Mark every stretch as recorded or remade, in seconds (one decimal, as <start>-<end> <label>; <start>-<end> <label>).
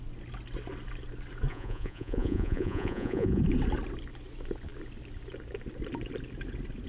0.0-1.5 recorded; 1.5-3.4 remade; 3.4-6.9 recorded